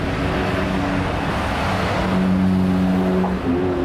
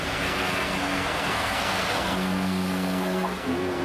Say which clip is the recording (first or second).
first